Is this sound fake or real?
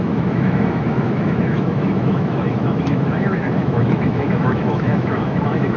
fake